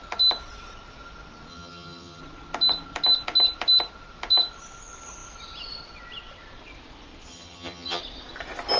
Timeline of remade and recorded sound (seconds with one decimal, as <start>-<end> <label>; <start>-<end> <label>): 0.0-1.5 recorded; 1.5-2.2 remade; 2.2-7.3 recorded; 7.3-8.0 remade; 8.0-8.8 recorded

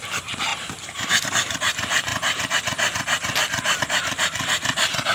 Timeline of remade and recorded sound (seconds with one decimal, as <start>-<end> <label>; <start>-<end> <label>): 0.0-2.1 remade; 2.1-3.8 recorded; 3.8-5.1 remade

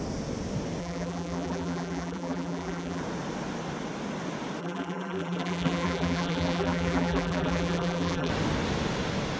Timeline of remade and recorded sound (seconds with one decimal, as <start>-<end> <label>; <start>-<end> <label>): 0.0-0.8 recorded; 0.8-3.0 remade; 3.0-4.6 recorded; 4.6-8.3 remade; 8.3-9.4 recorded

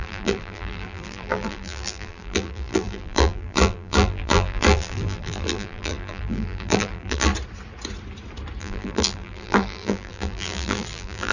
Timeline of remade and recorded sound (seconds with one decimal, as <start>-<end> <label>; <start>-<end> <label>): 0.0-7.3 remade; 7.3-8.6 recorded; 8.6-11.3 remade

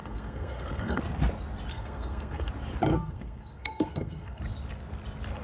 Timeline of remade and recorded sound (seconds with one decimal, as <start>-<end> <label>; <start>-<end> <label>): 0.0-1.0 remade; 1.0-1.7 recorded; 1.7-2.5 remade; 2.5-2.9 recorded; 2.9-4.4 remade; 4.4-5.4 recorded

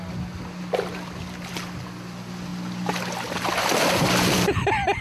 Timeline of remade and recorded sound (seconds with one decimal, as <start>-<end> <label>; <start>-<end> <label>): 0.0-5.0 recorded

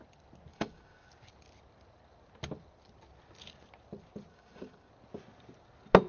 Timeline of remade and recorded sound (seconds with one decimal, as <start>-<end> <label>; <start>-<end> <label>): 0.0-0.5 recorded; 0.5-1.1 remade; 1.1-4.3 recorded; 4.3-4.9 remade; 4.9-6.1 recorded